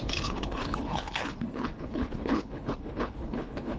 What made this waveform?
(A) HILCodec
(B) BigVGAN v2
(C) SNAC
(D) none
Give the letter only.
A